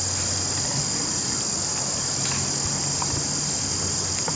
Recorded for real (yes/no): yes